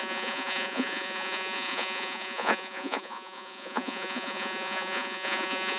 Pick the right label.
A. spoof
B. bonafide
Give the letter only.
A